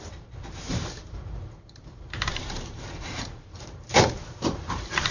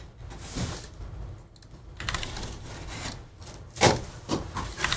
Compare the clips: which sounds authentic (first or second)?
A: second